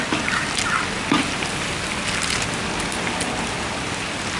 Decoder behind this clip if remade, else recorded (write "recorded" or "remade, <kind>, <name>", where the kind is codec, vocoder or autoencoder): recorded